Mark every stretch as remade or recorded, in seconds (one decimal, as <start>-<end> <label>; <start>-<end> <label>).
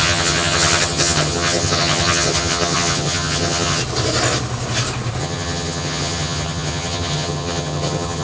0.0-3.8 remade; 3.8-5.2 recorded; 5.2-8.2 remade